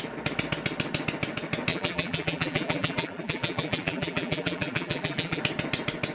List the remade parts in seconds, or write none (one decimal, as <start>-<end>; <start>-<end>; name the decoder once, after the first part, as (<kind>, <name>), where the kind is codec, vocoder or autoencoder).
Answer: 1.7-5.4 (vocoder, BigVGAN v2)